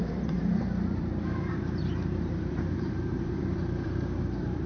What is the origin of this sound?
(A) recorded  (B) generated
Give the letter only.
B